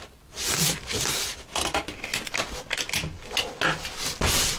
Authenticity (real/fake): real